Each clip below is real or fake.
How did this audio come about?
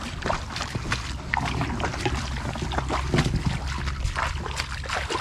real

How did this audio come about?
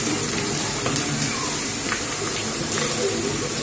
real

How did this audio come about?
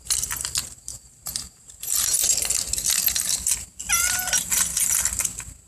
real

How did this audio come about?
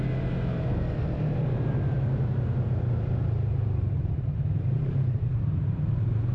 fake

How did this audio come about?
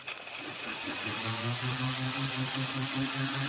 fake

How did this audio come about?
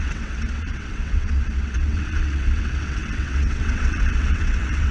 fake